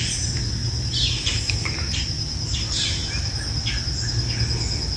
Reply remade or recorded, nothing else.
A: recorded